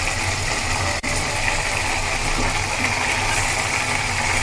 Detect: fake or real real